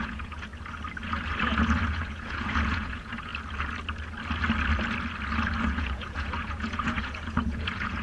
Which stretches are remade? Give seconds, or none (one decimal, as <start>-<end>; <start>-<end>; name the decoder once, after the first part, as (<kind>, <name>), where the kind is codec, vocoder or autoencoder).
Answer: 0.0-0.5 (vocoder, Vocos); 1.8-3.3; 5.6-8.0